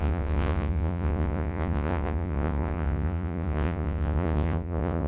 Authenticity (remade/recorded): remade